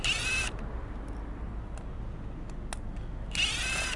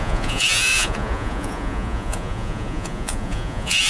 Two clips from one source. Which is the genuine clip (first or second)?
first